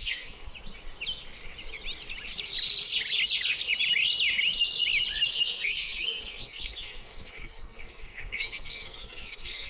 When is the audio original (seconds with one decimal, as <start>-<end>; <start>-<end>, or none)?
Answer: 0.5-5.3